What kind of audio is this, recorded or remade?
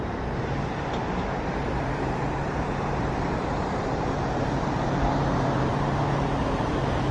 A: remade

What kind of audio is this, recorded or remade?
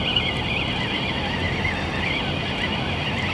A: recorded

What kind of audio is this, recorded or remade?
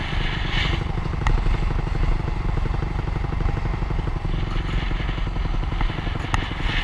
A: recorded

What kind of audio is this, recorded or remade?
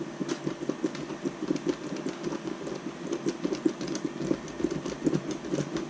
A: recorded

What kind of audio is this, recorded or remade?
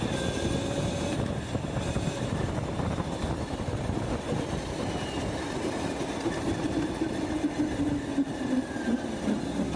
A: recorded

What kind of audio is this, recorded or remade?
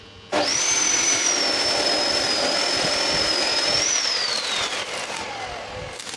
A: recorded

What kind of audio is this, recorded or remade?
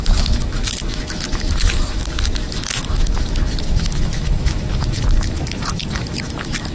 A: remade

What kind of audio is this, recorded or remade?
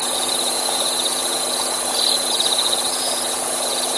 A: remade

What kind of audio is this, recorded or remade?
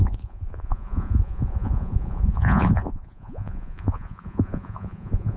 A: remade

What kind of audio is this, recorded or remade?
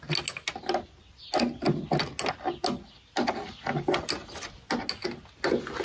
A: recorded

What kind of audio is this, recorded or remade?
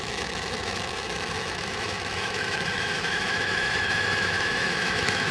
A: remade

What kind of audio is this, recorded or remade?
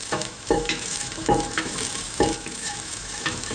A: remade